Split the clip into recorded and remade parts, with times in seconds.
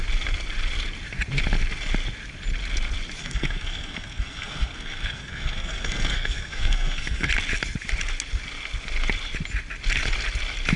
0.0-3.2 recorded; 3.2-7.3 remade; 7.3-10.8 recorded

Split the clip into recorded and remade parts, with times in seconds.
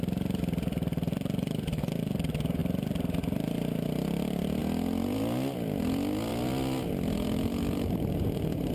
0.0-8.7 recorded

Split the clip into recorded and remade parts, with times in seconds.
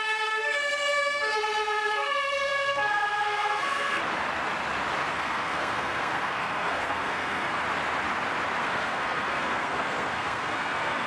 0.0-4.0 remade; 4.0-5.1 recorded; 5.1-7.6 remade; 7.6-8.6 recorded; 8.6-11.1 remade